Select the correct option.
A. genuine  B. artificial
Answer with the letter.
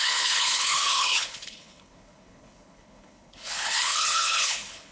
B